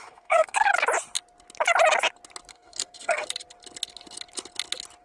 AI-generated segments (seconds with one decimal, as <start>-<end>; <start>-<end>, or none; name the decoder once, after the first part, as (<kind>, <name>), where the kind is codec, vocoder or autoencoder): 0.0-0.7 (codec, SNAC); 2.5-3.2